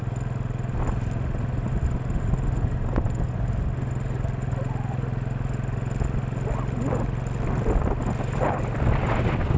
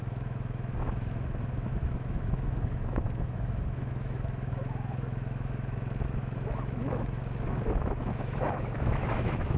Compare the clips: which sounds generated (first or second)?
second